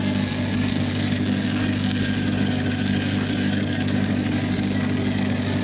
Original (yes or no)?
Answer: no